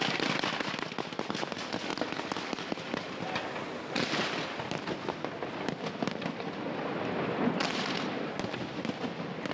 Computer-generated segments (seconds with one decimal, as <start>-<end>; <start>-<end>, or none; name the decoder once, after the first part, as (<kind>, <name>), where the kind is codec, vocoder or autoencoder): none